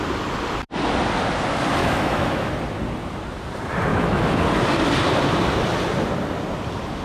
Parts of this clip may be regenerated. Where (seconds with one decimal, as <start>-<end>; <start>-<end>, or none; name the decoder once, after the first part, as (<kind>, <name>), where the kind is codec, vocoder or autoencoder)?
1.8-2.5 (autoencoder, DAC-VAE); 3.9-4.4